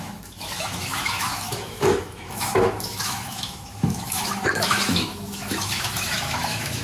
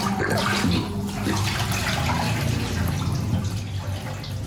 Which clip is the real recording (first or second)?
second